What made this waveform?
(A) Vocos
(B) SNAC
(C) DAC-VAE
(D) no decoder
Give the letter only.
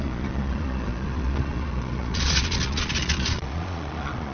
A